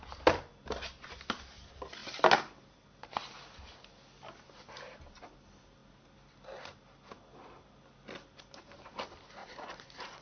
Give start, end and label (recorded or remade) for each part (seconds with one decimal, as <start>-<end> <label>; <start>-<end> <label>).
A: 0.0-9.4 recorded; 9.4-10.2 remade